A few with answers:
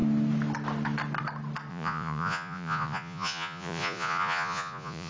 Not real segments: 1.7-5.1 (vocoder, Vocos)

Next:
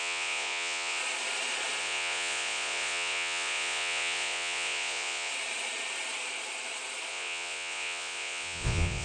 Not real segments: 0.0-1.0 (vocoder, Vocos); 1.8-5.3; 7.1-9.0

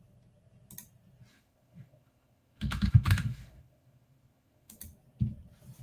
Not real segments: 1.3-4.8 (autoencoder, DAC-VAE)

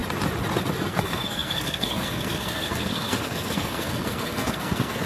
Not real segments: 0.9-5.1 (codec, SNAC)

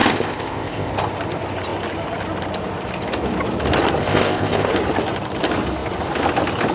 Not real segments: 0.0-0.9 (codec, ZipCodec); 4.0-4.7

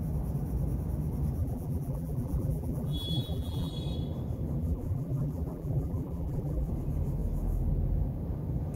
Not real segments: 1.4-3.7 (vocoder, BigVGAN v2); 4.6-6.7